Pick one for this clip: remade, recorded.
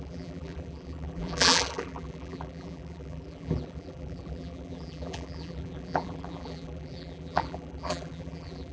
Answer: remade